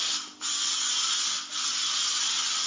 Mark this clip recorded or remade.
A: recorded